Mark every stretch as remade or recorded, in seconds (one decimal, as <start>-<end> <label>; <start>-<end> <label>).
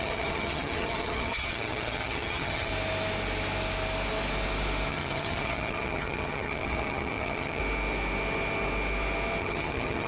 0.0-2.7 remade; 2.7-4.9 recorded; 4.9-7.6 remade; 7.6-9.4 recorded; 9.4-10.1 remade